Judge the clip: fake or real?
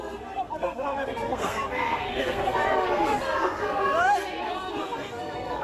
fake